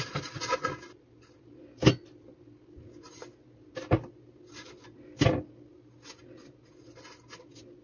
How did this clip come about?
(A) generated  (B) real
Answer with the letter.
B